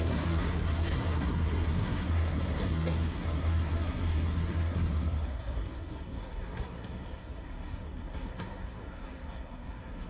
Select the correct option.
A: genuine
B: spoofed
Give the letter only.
B